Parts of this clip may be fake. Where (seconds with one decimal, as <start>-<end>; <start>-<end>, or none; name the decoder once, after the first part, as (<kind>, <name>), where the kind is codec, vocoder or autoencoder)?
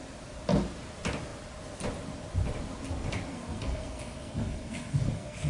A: 3.3-5.5 (codec, SNAC)